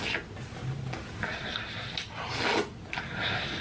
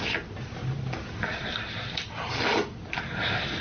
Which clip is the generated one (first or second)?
second